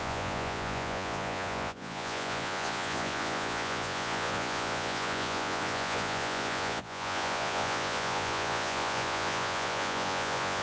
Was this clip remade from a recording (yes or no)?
yes